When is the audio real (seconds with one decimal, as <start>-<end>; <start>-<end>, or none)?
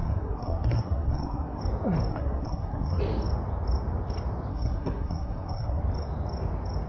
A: 1.6-2.1; 3.0-4.5; 5.8-6.9